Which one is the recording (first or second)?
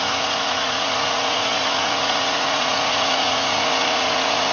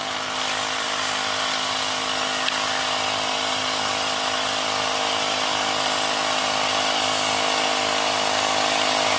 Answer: second